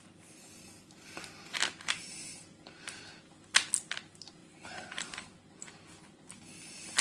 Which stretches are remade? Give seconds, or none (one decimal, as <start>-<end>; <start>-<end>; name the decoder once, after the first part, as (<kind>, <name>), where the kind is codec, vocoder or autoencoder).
none